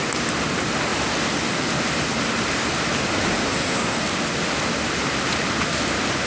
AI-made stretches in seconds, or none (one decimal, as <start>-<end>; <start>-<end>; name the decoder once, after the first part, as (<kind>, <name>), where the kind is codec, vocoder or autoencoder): 3.5-4.0 (codec, SNAC)